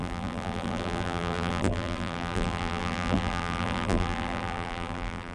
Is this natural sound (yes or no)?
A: no